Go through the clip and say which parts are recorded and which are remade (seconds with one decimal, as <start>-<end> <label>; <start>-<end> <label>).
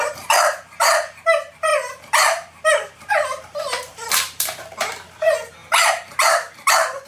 0.0-7.1 remade